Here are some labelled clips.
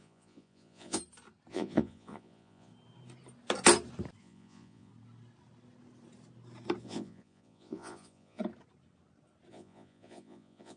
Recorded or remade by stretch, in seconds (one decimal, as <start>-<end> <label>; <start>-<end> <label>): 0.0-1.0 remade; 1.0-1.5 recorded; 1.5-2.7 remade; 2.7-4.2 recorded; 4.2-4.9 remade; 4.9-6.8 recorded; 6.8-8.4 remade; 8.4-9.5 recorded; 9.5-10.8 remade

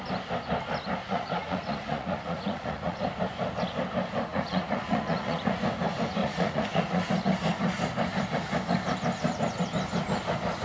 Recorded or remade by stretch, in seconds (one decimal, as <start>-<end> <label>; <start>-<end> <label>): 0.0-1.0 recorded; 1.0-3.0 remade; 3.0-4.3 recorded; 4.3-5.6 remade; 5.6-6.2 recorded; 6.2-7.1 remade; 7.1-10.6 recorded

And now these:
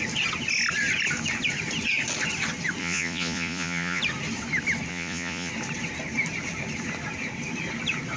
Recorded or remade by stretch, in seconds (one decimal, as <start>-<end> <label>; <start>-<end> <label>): 0.0-2.8 recorded; 2.8-4.0 remade; 4.0-4.9 recorded; 4.9-5.5 remade; 5.5-8.2 recorded

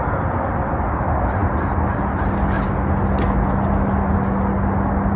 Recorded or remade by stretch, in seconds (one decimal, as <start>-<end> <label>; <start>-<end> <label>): 0.0-5.2 recorded

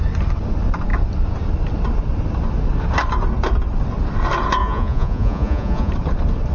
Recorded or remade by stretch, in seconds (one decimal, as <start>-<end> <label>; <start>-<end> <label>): 0.0-4.6 recorded; 4.6-5.9 remade; 5.9-6.5 recorded

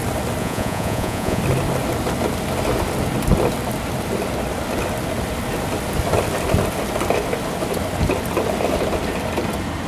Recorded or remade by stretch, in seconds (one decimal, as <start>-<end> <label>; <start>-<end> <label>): 0.0-0.4 recorded; 0.4-1.4 remade; 1.4-9.9 recorded

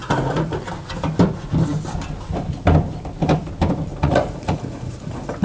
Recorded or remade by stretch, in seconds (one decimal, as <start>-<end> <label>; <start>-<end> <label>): 0.0-0.6 remade; 0.6-3.9 recorded; 3.9-5.4 remade

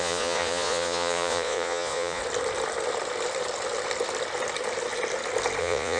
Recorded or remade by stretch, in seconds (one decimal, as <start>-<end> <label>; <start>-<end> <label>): 0.0-2.2 remade; 2.2-5.6 recorded; 5.6-6.0 remade